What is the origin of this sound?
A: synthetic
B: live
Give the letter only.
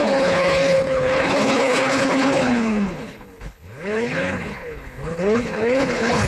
A